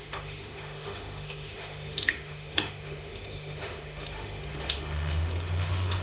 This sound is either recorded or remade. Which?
remade